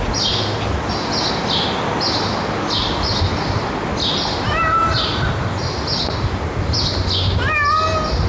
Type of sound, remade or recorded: recorded